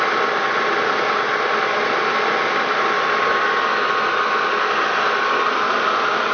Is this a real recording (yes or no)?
yes